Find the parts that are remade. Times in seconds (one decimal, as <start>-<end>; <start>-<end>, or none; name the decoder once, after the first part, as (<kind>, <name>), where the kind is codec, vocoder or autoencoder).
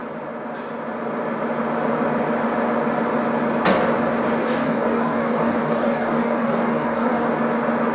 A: 4.4-7.3 (codec, DAC)